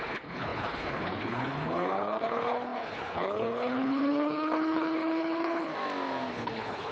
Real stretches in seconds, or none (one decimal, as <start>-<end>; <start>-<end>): 5.7-6.3